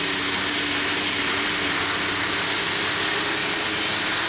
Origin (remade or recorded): recorded